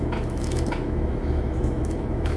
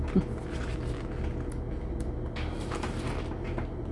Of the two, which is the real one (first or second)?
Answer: second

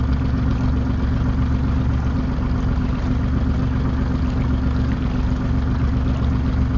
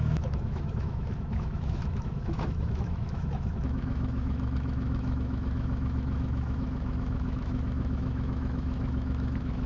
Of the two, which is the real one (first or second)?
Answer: first